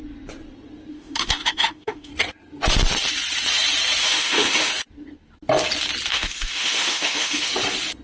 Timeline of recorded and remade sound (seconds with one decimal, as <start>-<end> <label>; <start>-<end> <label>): 0.0-0.9 recorded; 0.9-2.1 remade; 2.1-4.0 recorded; 4.0-4.7 remade; 4.7-6.1 recorded; 6.1-7.5 remade; 7.5-8.0 recorded